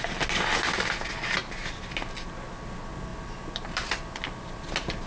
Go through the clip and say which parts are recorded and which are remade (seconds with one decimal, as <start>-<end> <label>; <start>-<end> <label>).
0.0-3.1 recorded; 3.1-4.2 remade; 4.2-5.1 recorded